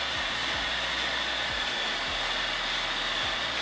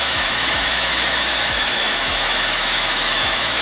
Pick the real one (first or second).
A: first